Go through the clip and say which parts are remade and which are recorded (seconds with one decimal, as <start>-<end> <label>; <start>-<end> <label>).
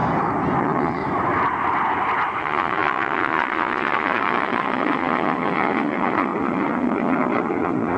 0.0-0.6 recorded; 0.6-1.0 remade; 1.0-2.4 recorded; 2.4-8.0 remade